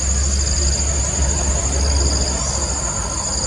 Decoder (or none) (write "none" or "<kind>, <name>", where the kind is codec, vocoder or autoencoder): none